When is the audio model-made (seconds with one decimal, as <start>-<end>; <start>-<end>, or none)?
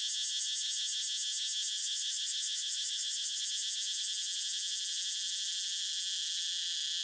1.8-3.4